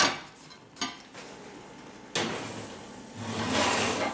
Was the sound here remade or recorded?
recorded